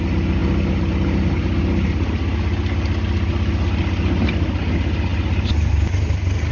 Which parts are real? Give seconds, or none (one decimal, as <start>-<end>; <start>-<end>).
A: 0.0-6.5